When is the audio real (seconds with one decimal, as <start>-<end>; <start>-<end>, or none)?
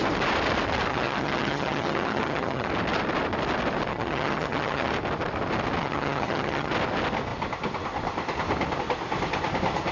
0.0-0.9; 2.7-3.9; 4.9-5.8; 6.7-9.9